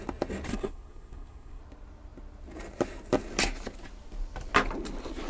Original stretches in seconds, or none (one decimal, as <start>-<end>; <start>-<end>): 0.0-0.5; 1.6-5.3